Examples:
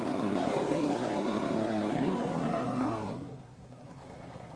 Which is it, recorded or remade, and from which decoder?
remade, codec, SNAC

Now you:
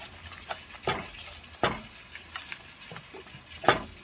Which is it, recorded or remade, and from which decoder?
recorded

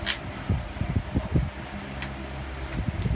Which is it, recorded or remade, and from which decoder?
recorded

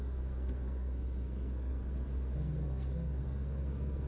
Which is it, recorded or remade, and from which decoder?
remade, codec, SNAC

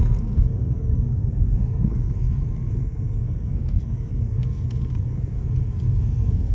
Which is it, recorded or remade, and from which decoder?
remade, codec, SNAC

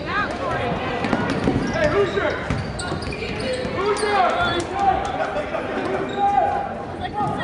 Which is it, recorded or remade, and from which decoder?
recorded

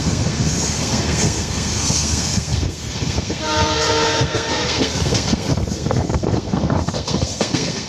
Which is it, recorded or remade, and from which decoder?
remade, codec, SNAC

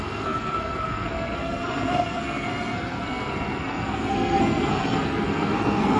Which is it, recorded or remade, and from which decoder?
remade, codec, SNAC